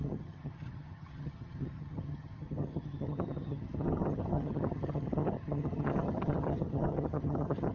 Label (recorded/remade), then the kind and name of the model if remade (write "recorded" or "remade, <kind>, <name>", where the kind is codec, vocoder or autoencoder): remade, vocoder, HiFi-GAN